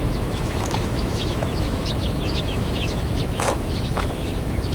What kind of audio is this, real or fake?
fake